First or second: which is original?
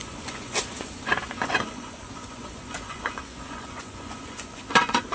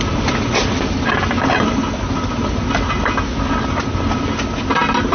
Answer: second